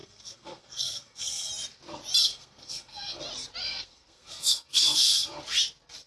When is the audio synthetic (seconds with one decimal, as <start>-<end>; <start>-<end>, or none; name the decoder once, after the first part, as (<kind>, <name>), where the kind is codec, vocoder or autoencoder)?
0.0-1.5 (codec, SNAC); 2.2-3.2; 3.6-5.4